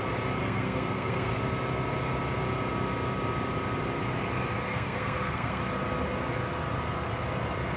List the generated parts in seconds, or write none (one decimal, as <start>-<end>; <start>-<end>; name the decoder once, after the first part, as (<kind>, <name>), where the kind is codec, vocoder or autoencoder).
0.4-1.4 (codec, SNAC); 4.7-5.6

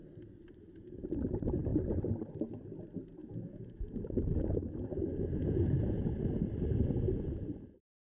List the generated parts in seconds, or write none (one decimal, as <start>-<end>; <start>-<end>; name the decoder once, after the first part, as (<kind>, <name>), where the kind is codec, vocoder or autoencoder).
3.2-6.0 (autoencoder, DAC-VAE)